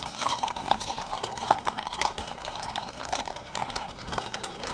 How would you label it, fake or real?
fake